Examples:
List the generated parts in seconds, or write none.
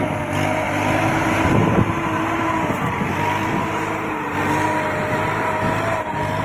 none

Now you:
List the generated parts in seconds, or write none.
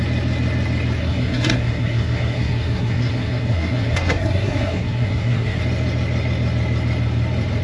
1.0-5.6 (codec, SNAC)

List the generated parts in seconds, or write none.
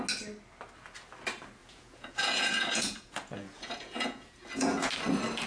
1.6-4.9 (vocoder, Vocos)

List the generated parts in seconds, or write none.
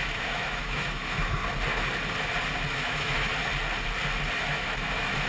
0.0-1.4 (autoencoder, DAC-VAE); 2.7-3.3; 4.4-5.3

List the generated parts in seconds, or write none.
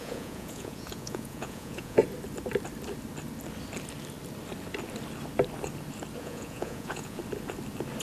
0.0-2.0 (vocoder, Vocos); 6.2-7.2